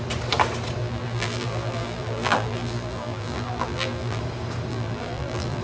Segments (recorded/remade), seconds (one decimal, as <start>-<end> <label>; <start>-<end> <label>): 0.0-0.8 recorded; 0.8-4.2 remade; 4.2-4.7 recorded; 4.7-5.6 remade